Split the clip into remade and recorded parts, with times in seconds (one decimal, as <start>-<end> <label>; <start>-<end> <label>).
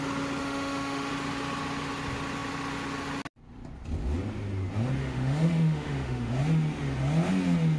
0.0-0.4 recorded; 0.4-1.1 remade; 1.1-5.0 recorded; 5.0-6.3 remade; 6.3-7.8 recorded